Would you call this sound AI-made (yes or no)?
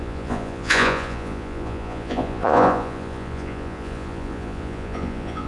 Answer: yes